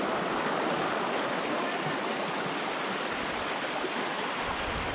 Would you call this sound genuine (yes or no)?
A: yes